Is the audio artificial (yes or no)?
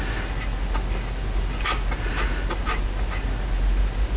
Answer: no